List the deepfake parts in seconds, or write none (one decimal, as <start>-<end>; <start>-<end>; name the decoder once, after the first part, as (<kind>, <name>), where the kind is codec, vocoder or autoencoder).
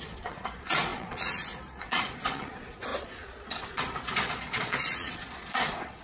0.0-6.0 (vocoder, Vocos)